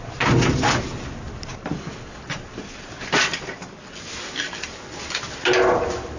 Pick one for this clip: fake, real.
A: real